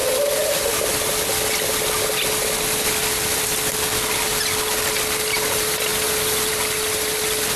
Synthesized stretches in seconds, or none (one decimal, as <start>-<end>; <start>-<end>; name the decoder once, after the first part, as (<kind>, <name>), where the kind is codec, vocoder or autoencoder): none

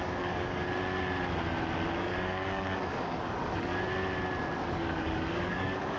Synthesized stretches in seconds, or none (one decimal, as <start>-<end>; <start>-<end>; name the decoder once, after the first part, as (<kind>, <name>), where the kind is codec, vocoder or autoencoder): 0.0-0.6 (codec, DAC); 2.0-3.7; 4.7-6.0

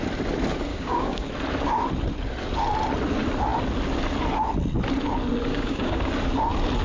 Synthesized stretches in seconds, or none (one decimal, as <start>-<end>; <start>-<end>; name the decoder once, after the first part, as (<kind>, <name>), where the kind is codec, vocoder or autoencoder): 0.7-1.3 (codec, DAC); 5.5-6.1

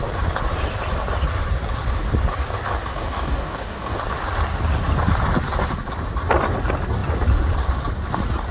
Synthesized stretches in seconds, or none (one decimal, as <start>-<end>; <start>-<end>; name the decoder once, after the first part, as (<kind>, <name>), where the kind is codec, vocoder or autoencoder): 2.9-4.0 (codec, DAC)

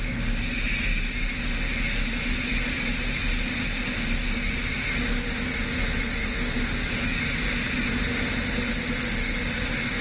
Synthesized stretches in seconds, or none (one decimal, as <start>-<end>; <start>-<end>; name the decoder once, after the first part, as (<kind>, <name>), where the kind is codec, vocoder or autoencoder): 6.2-7.2 (codec, DAC)

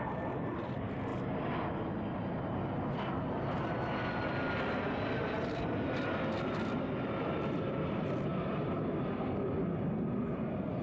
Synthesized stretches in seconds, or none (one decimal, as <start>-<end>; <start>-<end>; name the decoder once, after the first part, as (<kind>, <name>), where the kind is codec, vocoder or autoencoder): none